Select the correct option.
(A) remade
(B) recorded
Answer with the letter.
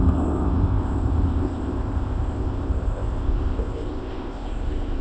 A